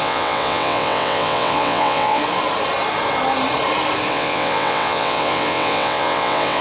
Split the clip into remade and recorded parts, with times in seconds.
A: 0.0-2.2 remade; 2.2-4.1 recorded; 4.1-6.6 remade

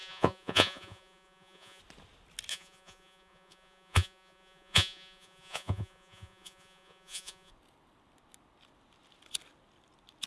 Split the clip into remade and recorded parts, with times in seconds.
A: 0.0-1.8 remade; 1.8-2.5 recorded; 2.5-7.5 remade; 7.5-10.3 recorded

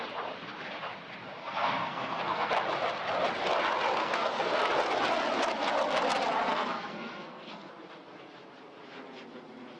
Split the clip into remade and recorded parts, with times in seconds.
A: 0.0-1.4 recorded; 1.4-2.5 remade; 2.5-4.0 recorded; 4.0-4.7 remade; 4.7-6.5 recorded; 6.5-7.7 remade; 7.7-9.8 recorded

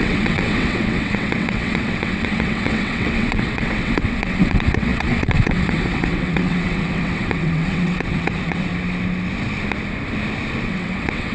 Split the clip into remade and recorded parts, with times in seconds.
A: 0.0-8.7 remade; 8.7-10.6 recorded; 10.6-11.3 remade